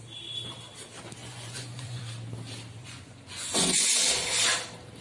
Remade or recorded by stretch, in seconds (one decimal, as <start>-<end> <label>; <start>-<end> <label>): 0.0-1.2 recorded; 1.2-2.0 remade; 2.0-2.8 recorded; 2.8-4.4 remade; 4.4-5.0 recorded